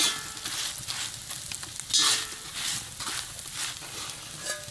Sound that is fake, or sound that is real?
real